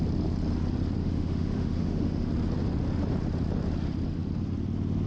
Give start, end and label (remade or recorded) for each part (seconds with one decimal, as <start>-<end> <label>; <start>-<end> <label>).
0.0-1.0 recorded; 1.0-2.3 remade; 2.3-5.1 recorded